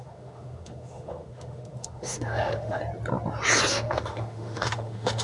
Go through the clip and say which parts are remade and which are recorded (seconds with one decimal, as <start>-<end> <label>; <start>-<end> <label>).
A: 0.0-2.8 remade; 2.8-3.7 recorded; 3.7-5.2 remade